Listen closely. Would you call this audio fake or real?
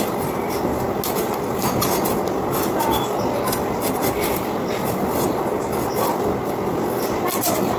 real